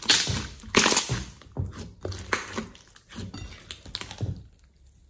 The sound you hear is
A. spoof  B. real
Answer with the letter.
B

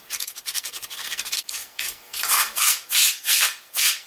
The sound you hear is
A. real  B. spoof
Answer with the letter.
B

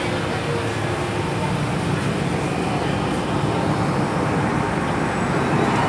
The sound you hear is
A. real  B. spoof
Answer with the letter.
A